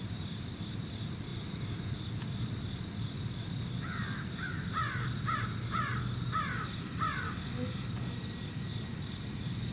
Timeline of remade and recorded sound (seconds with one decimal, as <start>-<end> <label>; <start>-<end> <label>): 0.0-9.7 recorded